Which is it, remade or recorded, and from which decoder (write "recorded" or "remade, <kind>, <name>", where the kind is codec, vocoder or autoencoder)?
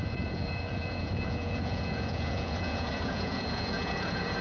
remade, vocoder, Vocos